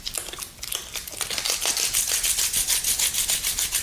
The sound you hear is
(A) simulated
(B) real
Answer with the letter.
B